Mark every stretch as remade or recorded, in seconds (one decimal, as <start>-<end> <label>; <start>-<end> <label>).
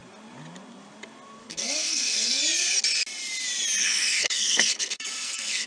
0.0-1.4 recorded; 1.4-2.4 remade; 2.4-3.8 recorded; 3.8-5.7 remade